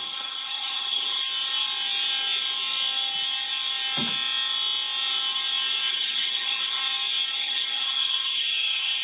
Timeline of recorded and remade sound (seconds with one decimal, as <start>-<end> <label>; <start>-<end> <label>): 0.0-1.2 remade; 1.2-5.9 recorded; 5.9-6.8 remade; 6.8-7.3 recorded; 7.3-9.0 remade